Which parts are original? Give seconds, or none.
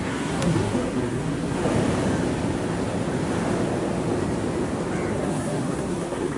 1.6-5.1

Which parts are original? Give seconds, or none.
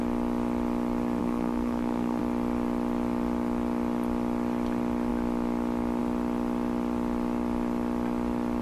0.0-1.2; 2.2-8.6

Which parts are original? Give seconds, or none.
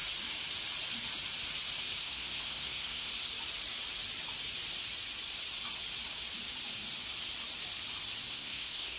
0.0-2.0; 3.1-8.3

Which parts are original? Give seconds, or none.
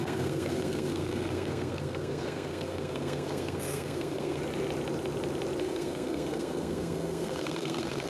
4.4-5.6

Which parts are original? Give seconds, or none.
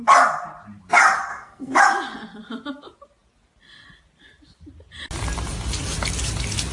0.0-1.3; 1.8-6.7